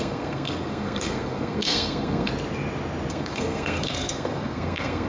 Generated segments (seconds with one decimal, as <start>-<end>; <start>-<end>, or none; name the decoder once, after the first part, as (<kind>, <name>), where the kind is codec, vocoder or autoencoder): 0.0-2.3 (codec, SNAC); 3.1-5.1

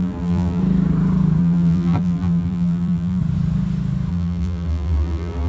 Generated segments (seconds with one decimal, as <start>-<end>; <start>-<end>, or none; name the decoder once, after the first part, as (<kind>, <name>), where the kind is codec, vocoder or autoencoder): 0.0-0.6 (vocoder, BigVGAN v2); 1.4-3.2; 4.1-5.5

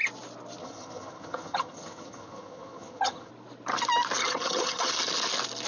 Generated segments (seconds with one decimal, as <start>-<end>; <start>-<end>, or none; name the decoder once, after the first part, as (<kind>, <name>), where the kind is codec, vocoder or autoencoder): 0.6-3.3 (vocoder, HiFi-GAN); 4.2-4.9

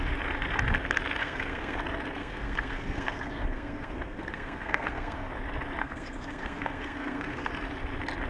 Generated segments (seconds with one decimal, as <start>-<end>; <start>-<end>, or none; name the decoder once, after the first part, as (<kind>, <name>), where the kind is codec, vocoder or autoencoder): 1.2-1.8 (codec, SNAC); 2.2-5.3; 5.8-7.5

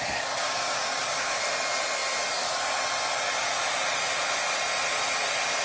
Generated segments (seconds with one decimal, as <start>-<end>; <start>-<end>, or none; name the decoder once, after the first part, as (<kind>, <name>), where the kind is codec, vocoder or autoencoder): 0.4-1.4 (codec, DAC)

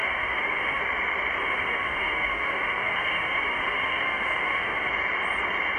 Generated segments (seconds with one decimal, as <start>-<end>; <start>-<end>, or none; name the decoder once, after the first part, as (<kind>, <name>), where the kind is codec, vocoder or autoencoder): 0.0-0.8 (autoencoder, DAC-VAE); 1.4-4.9

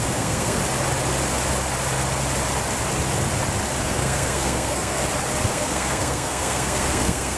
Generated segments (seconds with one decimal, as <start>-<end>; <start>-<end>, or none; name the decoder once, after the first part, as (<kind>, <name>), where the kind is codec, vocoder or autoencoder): 0.0-0.6 (codec, SNAC); 3.8-5.0; 5.5-7.4

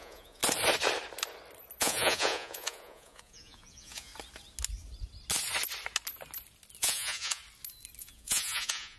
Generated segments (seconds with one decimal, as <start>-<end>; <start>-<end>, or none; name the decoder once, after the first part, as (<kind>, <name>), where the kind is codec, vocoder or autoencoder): 0.0-0.4 (vocoder, Vocos); 1.8-4.1; 6.8-7.4; 8.0-9.0